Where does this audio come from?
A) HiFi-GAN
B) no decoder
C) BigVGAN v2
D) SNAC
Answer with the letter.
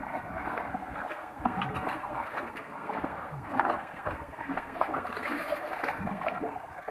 D